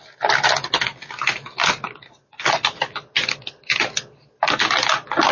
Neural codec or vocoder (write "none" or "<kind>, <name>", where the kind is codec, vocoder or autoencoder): none